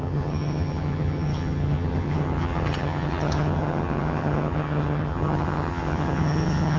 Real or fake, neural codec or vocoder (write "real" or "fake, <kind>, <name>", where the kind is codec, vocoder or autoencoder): fake, vocoder, HiFi-GAN